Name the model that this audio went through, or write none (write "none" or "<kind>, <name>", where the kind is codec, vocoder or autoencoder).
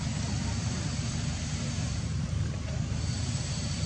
vocoder, BigVGAN v2